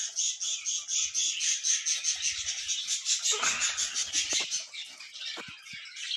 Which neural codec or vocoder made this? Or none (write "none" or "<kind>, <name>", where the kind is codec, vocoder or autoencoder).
none